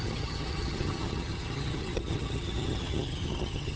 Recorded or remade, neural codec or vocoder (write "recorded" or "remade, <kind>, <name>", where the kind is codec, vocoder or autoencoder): remade, vocoder, HiFi-GAN